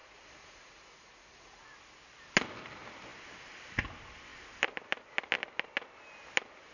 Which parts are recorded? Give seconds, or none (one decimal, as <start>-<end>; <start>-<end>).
1.6-6.7